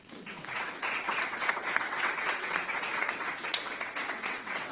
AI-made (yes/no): yes